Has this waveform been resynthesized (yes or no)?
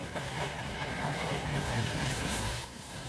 yes